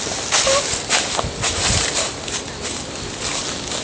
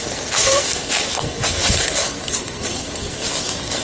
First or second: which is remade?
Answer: second